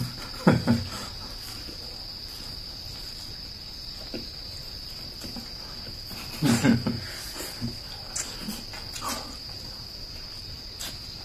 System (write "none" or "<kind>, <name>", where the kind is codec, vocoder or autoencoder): none